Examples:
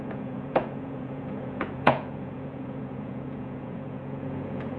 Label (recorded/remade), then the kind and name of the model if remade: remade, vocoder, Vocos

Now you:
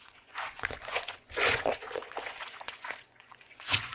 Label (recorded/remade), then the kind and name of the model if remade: remade, vocoder, Vocos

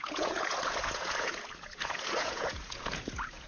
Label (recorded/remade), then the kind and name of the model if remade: remade, vocoder, Vocos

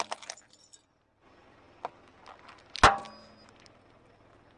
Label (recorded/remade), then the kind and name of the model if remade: recorded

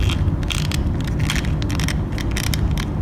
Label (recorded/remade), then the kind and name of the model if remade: recorded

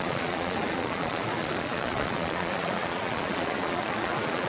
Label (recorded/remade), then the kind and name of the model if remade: remade, vocoder, Vocos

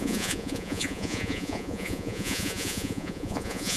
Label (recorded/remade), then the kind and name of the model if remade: remade, vocoder, Vocos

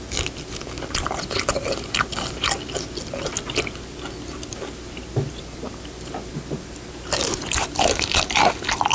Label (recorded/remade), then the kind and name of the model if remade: recorded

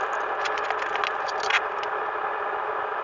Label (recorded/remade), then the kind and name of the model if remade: recorded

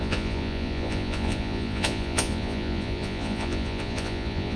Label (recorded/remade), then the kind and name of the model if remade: remade, vocoder, Vocos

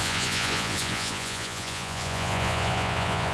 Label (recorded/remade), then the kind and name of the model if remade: remade, vocoder, Vocos